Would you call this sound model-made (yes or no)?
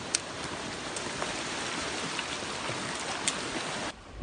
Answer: no